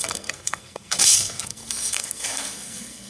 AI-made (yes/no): yes